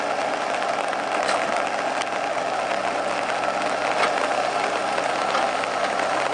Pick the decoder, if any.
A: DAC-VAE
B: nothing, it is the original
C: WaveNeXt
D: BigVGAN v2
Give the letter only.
B